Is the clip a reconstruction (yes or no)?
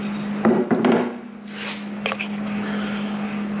no